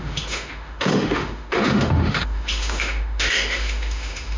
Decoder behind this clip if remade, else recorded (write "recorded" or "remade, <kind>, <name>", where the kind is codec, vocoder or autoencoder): remade, autoencoder, DAC-VAE